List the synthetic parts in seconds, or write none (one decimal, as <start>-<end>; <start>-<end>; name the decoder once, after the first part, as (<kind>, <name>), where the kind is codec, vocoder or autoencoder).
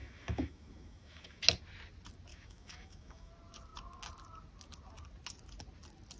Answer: 0.0-1.4 (autoencoder, DAC-VAE); 2.3-3.3